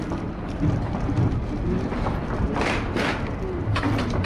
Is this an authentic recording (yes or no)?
yes